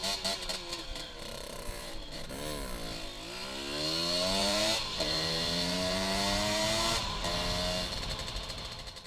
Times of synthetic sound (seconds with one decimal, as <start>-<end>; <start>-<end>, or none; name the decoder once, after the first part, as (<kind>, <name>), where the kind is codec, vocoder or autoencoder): 0.9-2.3 (vocoder, BigVGAN v2); 4.4-7.3